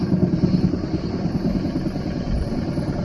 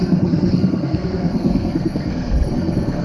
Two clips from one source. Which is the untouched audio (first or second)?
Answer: first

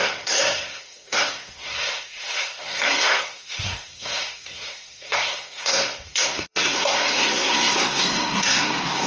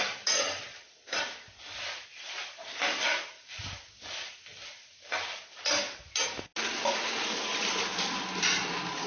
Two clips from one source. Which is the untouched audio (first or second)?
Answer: second